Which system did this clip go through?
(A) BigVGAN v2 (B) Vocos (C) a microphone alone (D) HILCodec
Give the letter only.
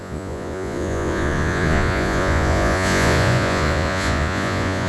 B